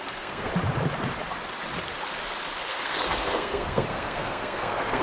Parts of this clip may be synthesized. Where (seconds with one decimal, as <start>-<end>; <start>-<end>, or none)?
0.0-0.5; 2.6-5.0